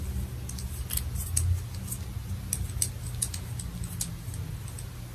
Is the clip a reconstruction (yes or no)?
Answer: no